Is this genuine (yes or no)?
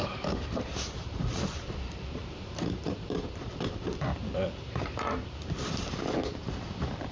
no